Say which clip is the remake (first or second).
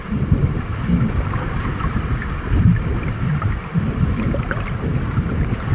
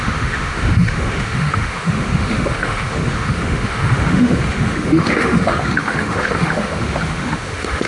second